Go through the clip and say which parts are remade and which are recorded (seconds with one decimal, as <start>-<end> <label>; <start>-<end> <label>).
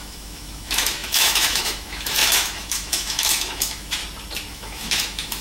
0.0-4.0 remade; 4.0-4.5 recorded; 4.5-5.4 remade